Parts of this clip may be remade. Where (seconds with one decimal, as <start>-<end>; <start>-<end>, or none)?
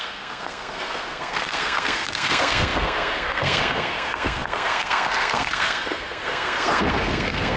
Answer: 0.0-7.6